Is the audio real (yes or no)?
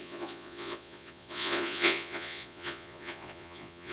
no